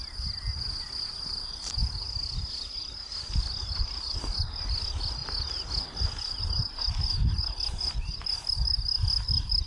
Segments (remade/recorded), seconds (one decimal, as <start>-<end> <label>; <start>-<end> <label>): 0.0-9.7 recorded